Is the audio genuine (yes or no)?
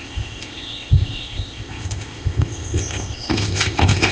no